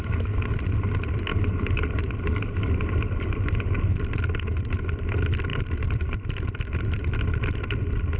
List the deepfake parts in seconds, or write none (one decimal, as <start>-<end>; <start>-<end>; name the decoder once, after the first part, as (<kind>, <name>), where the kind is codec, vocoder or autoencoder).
none